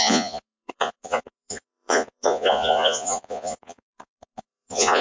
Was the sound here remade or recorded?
remade